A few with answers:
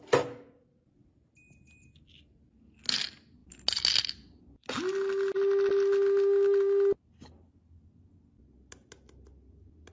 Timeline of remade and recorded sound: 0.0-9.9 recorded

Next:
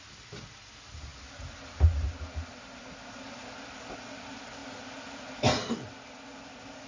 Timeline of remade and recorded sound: 0.0-6.9 recorded

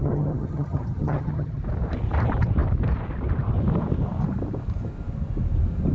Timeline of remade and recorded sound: 0.0-1.6 remade; 1.6-5.9 recorded